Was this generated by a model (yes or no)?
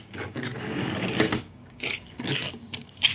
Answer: yes